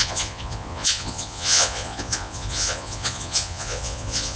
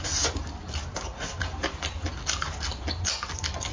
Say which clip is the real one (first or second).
second